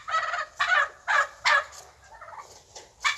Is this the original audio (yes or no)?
yes